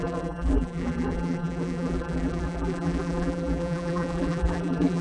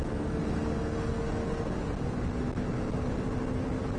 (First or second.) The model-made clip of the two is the first